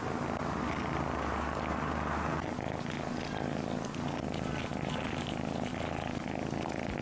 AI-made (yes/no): no